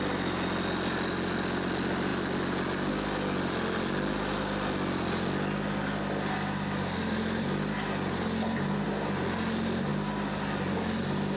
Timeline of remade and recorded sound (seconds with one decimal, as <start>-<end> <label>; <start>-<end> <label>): 0.0-11.4 recorded